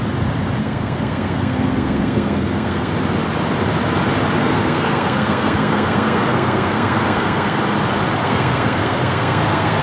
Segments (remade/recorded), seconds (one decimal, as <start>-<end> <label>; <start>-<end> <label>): 0.0-0.6 recorded; 0.6-2.9 remade; 2.9-4.4 recorded; 4.4-7.6 remade; 7.6-8.2 recorded; 8.2-9.8 remade